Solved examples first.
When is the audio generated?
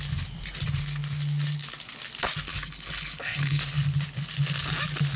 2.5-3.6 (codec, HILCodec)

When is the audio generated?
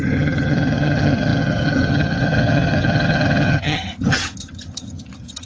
0.0-5.5 (vocoder, HiFi-GAN)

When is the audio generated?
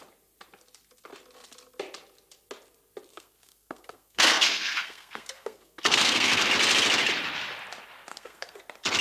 3.1-6.5 (codec, SNAC); 8.1-8.6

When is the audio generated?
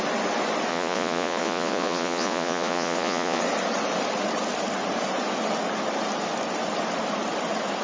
0.7-3.4 (vocoder, Vocos)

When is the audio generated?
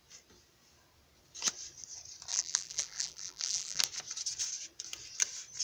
2.3-3.8 (vocoder, BigVGAN v2)